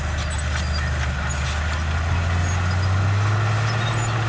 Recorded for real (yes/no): yes